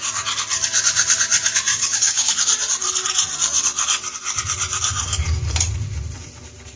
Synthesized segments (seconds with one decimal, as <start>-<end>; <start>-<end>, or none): 1.7-2.3